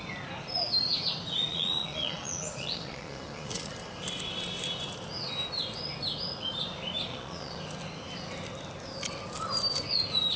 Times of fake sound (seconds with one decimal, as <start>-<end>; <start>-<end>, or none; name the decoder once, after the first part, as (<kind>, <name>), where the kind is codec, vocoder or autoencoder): 1.5-3.7 (vocoder, Vocos); 7.1-7.6